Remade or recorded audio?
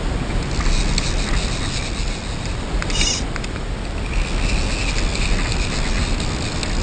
recorded